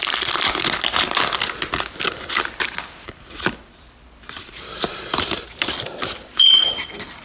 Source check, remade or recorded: remade